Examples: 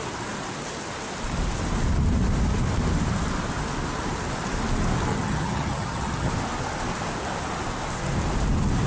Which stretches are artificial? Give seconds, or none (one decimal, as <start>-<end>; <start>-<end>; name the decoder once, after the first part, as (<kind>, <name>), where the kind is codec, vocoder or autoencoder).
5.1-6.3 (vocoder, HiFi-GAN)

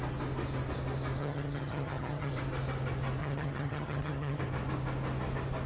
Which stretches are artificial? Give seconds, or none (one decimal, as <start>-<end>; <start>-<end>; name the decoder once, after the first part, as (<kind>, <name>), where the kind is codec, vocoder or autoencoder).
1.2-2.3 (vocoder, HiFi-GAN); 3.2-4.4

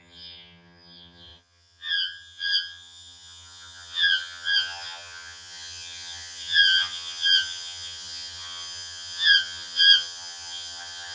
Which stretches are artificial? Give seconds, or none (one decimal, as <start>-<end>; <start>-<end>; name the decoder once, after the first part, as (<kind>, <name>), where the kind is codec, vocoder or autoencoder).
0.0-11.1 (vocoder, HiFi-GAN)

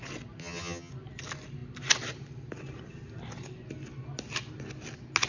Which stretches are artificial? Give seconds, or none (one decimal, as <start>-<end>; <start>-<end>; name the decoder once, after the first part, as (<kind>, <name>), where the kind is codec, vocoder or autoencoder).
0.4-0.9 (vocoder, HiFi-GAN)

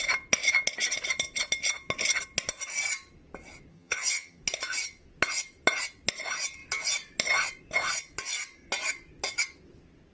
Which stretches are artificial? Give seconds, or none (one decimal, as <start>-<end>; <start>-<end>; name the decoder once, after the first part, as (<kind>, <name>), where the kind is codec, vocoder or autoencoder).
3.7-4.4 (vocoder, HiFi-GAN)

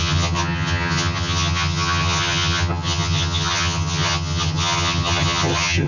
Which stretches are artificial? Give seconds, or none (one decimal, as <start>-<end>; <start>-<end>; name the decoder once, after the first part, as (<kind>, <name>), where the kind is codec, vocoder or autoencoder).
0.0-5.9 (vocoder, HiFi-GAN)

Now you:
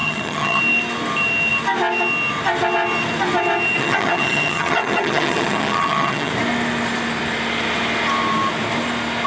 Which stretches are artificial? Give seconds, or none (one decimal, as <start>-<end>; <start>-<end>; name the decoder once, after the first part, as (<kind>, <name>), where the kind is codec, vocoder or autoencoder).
0.0-0.6 (vocoder, HiFi-GAN); 3.8-6.3

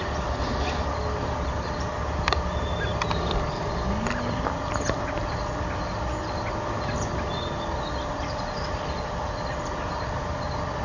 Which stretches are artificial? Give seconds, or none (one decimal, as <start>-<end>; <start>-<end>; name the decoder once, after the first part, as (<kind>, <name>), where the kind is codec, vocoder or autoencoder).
none